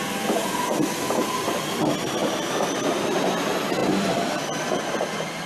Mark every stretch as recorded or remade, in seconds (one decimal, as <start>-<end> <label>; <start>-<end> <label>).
0.0-2.2 recorded; 2.2-2.7 remade; 2.7-3.8 recorded; 3.8-4.9 remade; 4.9-5.5 recorded